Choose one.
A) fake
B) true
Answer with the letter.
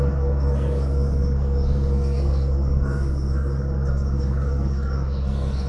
A